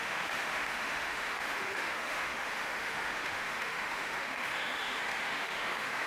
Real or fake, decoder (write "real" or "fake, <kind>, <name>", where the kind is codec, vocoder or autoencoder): fake, autoencoder, DAC-VAE